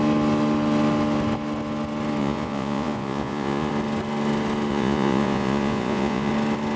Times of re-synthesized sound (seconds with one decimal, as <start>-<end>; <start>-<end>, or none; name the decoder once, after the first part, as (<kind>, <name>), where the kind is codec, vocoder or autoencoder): 2.2-3.7 (vocoder, Vocos); 4.7-6.3